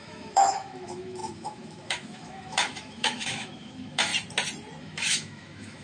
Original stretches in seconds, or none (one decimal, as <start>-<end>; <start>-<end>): 4.1-4.8